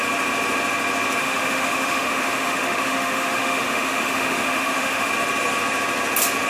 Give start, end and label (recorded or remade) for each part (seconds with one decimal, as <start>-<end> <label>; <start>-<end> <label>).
0.0-1.2 recorded; 1.2-5.1 remade; 5.1-6.5 recorded